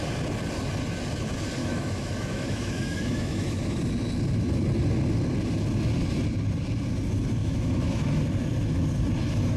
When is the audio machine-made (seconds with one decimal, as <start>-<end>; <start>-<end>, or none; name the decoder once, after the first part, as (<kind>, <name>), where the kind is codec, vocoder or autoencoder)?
1.6-3.8 (autoencoder, DAC-VAE); 7.4-8.2